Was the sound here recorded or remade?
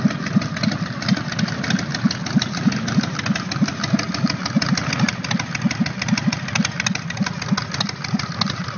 recorded